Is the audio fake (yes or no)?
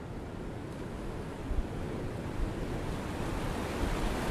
no